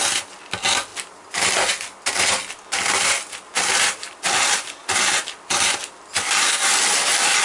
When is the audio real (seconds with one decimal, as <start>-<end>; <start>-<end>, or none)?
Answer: 0.0-7.4